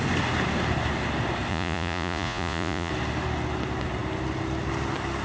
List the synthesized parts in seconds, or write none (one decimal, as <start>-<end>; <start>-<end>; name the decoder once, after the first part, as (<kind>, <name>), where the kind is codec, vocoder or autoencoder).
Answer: 1.5-2.9 (vocoder, Vocos)